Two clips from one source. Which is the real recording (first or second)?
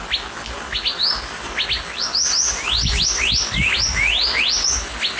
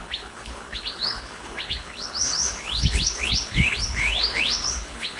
first